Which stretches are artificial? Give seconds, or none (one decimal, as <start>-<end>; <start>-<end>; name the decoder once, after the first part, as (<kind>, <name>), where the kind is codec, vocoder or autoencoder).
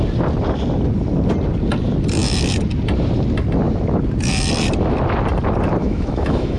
5.8-6.6 (autoencoder, DAC-VAE)